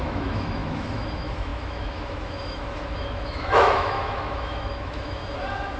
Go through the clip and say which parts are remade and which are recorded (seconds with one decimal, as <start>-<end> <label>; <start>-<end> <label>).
0.0-5.2 remade; 5.2-5.8 recorded